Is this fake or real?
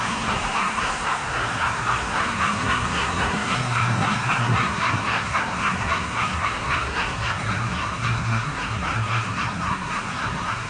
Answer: fake